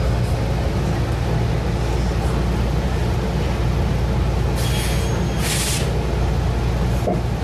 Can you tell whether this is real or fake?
real